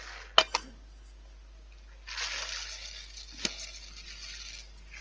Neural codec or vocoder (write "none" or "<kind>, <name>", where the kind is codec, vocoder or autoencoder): none